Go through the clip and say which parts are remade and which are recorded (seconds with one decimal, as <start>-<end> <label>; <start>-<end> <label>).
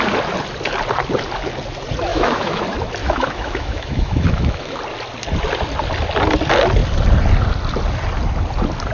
0.0-2.1 recorded; 2.1-2.6 remade; 2.6-3.0 recorded; 3.0-4.8 remade; 4.8-8.9 recorded